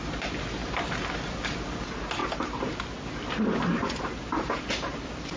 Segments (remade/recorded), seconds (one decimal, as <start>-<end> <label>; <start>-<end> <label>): 0.0-5.4 recorded